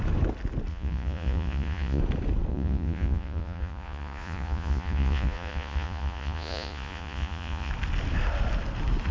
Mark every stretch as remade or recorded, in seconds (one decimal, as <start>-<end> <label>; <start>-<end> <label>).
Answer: 0.0-0.7 recorded; 0.7-2.0 remade; 2.0-2.5 recorded; 2.5-7.7 remade; 7.7-9.1 recorded

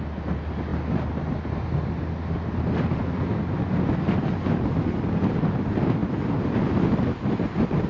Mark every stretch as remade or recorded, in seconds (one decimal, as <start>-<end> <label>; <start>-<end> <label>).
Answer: 0.0-7.9 recorded